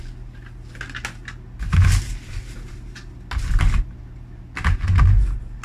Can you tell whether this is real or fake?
real